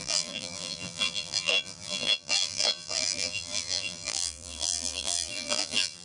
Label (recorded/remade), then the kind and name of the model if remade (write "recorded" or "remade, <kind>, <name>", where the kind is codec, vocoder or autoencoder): remade, vocoder, BigVGAN v2